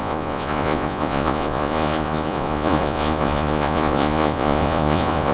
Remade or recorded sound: remade